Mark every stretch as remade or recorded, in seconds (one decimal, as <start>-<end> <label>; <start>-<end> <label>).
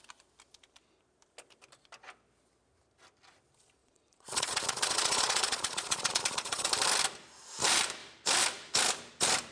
0.0-3.8 recorded; 3.8-6.7 remade; 6.7-9.5 recorded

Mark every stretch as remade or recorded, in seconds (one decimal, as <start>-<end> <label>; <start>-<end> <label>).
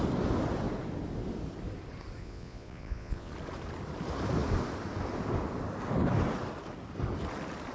0.0-2.2 recorded; 2.2-3.3 remade; 3.3-7.7 recorded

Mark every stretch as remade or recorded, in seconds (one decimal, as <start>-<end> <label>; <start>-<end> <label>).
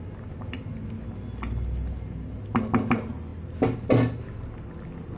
0.0-5.2 recorded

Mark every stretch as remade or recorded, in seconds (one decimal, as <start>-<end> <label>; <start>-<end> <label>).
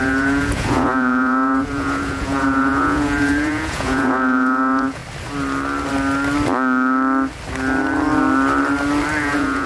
0.0-5.0 remade; 5.0-9.2 recorded; 9.2-9.7 remade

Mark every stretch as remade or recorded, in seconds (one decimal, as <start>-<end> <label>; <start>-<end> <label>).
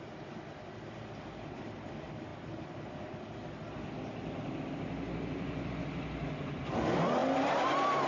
0.0-8.1 recorded